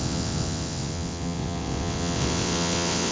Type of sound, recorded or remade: remade